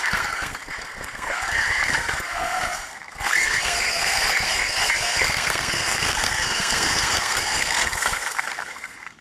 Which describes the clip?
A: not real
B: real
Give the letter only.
A